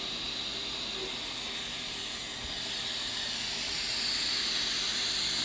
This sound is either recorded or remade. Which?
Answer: recorded